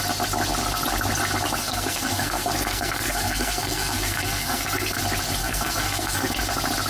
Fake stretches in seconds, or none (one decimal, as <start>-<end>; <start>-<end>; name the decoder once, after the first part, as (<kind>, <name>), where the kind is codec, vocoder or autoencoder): 1.6-5.0 (codec, SNAC); 5.4-6.4